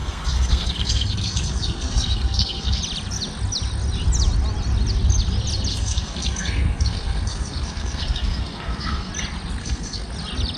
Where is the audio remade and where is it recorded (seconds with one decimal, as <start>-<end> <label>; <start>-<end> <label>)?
0.0-2.8 remade; 2.8-5.7 recorded; 5.7-9.1 remade; 9.1-9.6 recorded; 9.6-10.1 remade; 10.1-10.6 recorded